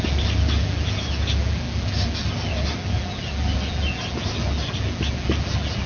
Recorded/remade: recorded